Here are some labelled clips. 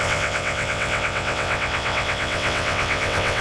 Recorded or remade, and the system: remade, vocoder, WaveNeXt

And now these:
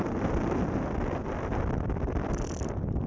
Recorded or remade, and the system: remade, vocoder, BigVGAN v2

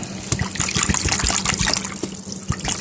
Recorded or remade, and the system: recorded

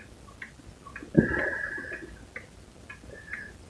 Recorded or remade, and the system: recorded